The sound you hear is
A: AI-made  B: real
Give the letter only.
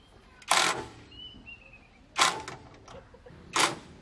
B